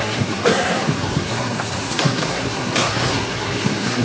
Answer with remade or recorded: remade